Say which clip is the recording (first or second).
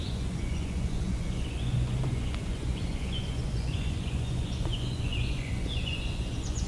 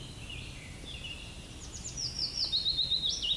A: second